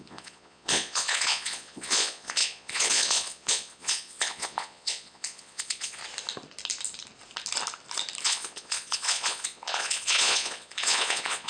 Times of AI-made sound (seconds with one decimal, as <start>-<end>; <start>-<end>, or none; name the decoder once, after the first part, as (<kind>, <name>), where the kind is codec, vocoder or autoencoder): 0.0-6.0 (vocoder, Vocos); 8.2-11.5